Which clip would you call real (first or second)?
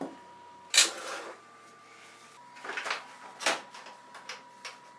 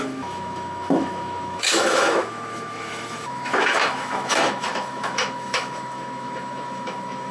first